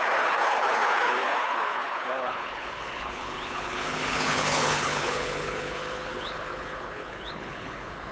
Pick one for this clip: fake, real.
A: fake